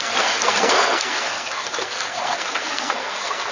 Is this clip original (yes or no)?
no